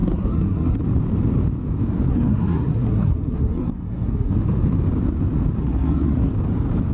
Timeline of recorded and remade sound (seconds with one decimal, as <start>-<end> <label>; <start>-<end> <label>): 0.0-0.8 remade; 0.8-2.1 recorded; 2.1-4.3 remade; 4.3-5.6 recorded; 5.6-6.3 remade; 6.3-6.9 recorded